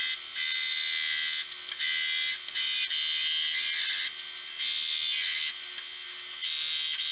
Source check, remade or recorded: recorded